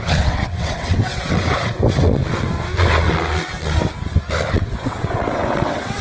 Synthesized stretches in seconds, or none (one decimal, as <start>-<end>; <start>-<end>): 0.0-2.2; 4.5-6.0